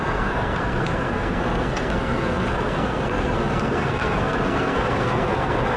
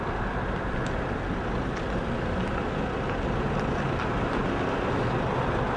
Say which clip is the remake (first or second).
first